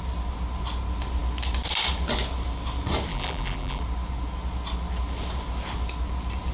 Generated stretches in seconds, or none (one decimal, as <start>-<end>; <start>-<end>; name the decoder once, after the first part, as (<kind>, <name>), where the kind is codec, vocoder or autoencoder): 3.1-3.8 (vocoder, BigVGAN v2)